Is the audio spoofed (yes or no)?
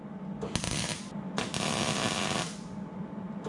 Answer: no